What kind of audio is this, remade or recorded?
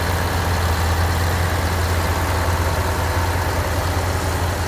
recorded